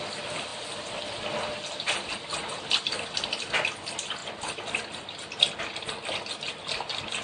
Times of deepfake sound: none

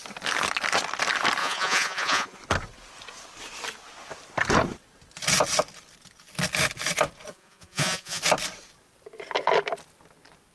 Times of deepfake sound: 1.4-2.4; 7.3-8.2

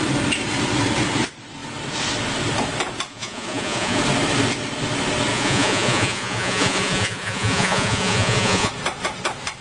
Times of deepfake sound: 3.1-4.0; 5.3-8.7